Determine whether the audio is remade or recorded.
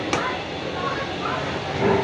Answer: recorded